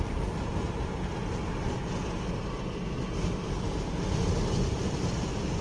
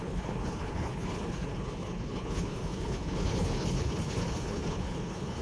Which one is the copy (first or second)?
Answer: second